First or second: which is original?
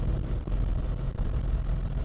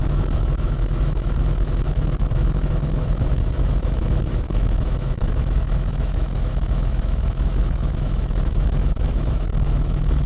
first